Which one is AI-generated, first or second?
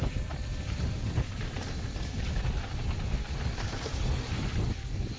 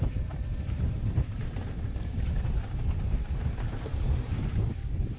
second